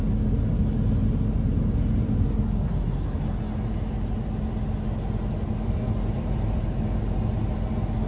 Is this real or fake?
real